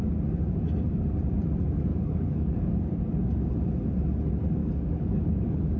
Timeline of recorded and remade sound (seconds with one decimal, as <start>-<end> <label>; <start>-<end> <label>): 0.0-1.9 recorded; 1.9-3.0 remade; 3.0-4.6 recorded; 4.6-5.8 remade